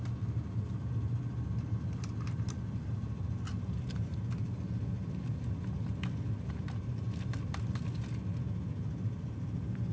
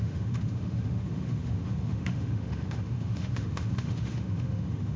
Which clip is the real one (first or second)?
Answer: first